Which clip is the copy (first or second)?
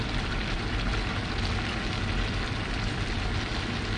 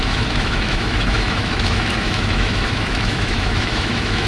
second